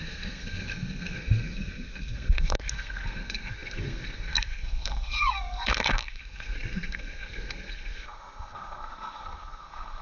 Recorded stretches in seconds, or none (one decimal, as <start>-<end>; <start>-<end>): none